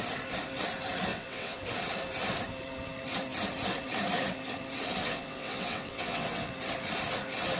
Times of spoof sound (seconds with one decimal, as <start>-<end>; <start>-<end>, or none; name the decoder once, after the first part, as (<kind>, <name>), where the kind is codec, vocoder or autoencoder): 1.1-1.6 (vocoder, WaveNeXt); 5.0-6.5